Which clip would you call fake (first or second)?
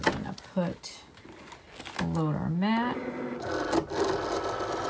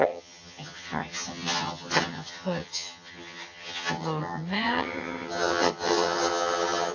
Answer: second